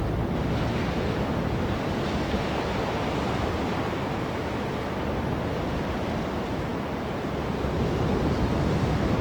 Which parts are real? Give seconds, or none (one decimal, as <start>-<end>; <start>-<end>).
0.0-9.2